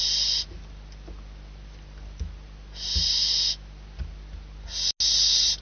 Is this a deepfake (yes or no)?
no